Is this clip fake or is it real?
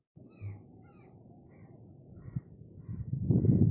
fake